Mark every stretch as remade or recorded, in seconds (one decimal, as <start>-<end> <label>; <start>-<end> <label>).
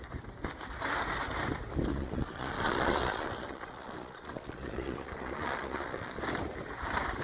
0.0-1.9 recorded; 1.9-6.2 remade; 6.2-7.2 recorded